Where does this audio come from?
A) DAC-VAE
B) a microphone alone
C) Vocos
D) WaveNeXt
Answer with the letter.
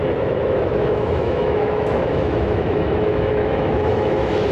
A